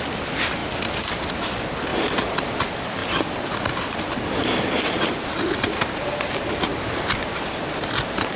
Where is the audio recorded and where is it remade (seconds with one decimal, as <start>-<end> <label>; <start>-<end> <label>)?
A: 0.0-0.6 recorded; 0.6-1.3 remade; 1.3-1.9 recorded; 1.9-2.6 remade; 2.6-3.0 recorded; 3.0-6.5 remade; 6.5-8.4 recorded